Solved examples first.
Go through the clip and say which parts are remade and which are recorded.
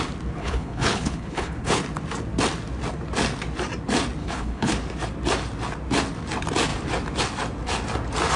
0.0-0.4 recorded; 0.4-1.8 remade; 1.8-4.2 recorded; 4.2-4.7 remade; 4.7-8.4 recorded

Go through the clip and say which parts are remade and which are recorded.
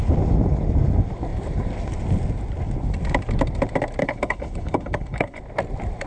0.0-4.0 recorded; 4.0-5.4 remade; 5.4-6.1 recorded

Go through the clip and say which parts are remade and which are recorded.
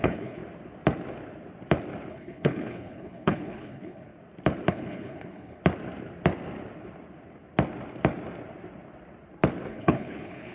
0.0-0.4 remade; 0.4-2.1 recorded; 2.1-4.1 remade; 4.1-4.7 recorded; 4.7-5.6 remade; 5.6-9.7 recorded; 9.7-10.5 remade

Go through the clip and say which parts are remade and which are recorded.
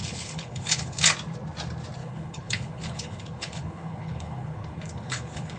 0.0-1.0 remade; 1.0-2.0 recorded; 2.0-5.6 remade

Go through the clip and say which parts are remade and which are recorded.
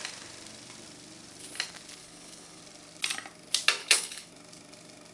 0.0-2.0 recorded; 2.0-2.6 remade; 2.6-3.8 recorded; 3.8-4.3 remade; 4.3-5.1 recorded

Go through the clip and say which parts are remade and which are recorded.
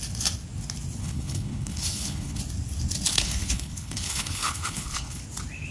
0.0-1.0 recorded; 1.0-2.4 remade; 2.4-3.1 recorded; 3.1-5.2 remade; 5.2-5.7 recorded